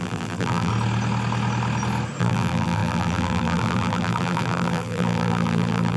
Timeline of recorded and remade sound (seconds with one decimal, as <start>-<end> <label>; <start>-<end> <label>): 0.0-0.7 remade; 0.7-2.2 recorded; 2.2-6.0 remade